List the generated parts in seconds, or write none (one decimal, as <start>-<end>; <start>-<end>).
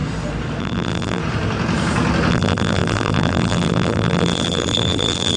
0.6-1.2; 2.3-5.4